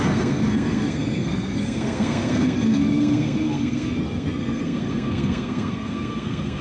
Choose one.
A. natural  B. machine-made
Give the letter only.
B